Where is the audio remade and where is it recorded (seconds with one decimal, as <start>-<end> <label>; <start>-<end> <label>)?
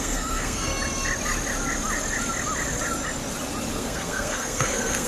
0.0-0.7 remade; 0.7-3.7 recorded; 3.7-5.1 remade